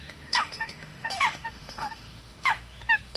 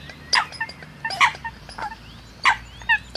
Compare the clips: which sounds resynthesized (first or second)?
first